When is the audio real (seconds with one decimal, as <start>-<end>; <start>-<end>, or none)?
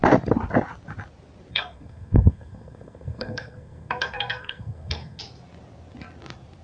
0.0-1.5; 5.2-6.6